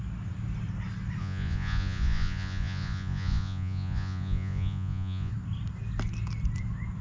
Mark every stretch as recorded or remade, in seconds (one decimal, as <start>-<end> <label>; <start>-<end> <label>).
0.0-1.2 recorded; 1.2-5.3 remade; 5.3-7.0 recorded

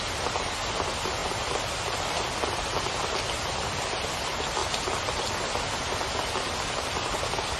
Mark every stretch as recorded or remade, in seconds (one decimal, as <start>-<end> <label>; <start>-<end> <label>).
0.0-7.6 recorded